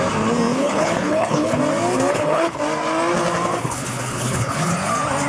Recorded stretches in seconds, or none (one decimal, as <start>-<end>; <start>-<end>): 0.0-0.5; 1.6-2.1; 2.6-3.6; 4.7-5.3